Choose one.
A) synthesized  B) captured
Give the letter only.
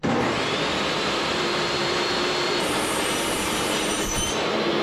A